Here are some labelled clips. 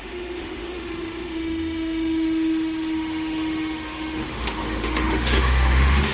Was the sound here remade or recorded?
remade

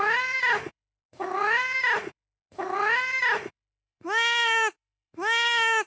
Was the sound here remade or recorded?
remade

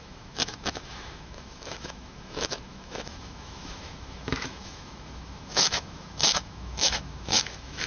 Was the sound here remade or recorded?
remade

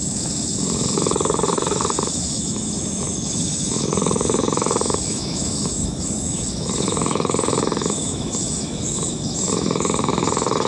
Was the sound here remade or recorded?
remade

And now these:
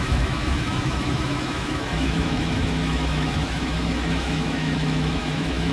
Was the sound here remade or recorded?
remade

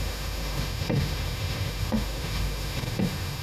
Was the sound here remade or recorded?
remade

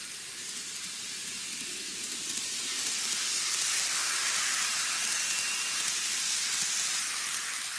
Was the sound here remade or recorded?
recorded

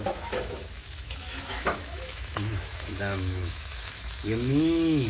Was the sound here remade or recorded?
remade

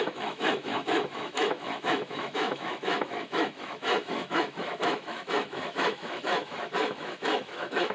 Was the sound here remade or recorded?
remade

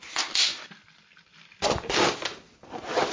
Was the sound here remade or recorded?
recorded